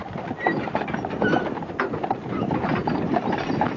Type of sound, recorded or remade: recorded